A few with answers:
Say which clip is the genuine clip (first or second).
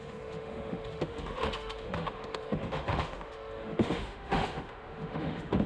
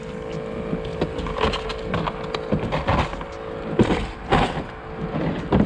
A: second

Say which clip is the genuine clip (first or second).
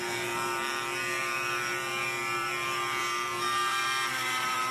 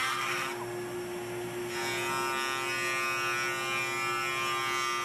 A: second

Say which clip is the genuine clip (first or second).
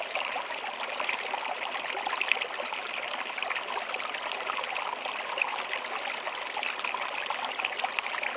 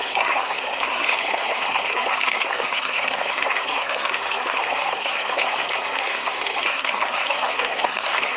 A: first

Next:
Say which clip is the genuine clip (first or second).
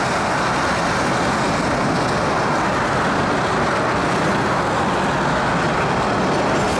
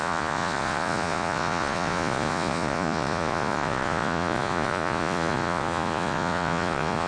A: first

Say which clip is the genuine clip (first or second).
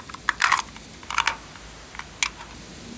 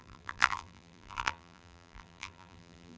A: first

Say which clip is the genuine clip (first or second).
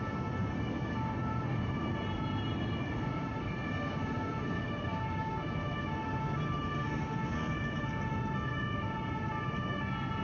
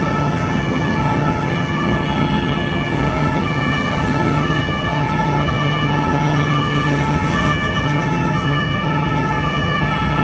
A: first